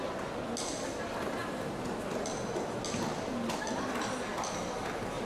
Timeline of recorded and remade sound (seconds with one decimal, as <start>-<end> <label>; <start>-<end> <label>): 0.0-4.3 recorded; 4.3-5.3 remade